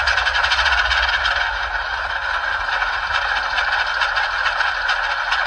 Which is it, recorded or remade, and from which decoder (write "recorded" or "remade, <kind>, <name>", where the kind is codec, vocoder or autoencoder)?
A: recorded